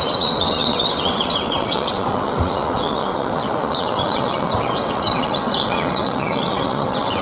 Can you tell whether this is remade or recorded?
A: remade